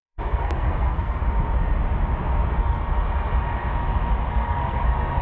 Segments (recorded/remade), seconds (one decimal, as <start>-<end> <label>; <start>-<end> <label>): 0.0-1.2 remade; 1.2-4.3 recorded; 4.3-5.2 remade

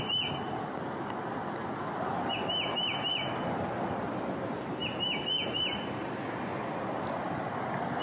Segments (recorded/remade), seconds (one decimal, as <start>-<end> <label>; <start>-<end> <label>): 0.0-8.0 recorded

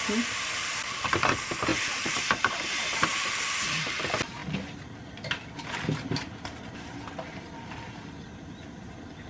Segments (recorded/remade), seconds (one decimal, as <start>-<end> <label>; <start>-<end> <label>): 0.0-1.7 recorded; 1.7-3.1 remade; 3.1-9.3 recorded